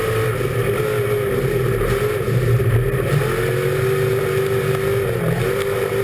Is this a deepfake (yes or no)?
no